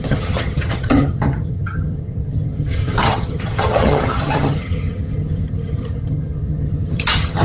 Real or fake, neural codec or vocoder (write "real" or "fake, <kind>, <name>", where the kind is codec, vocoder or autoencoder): fake, vocoder, HiFi-GAN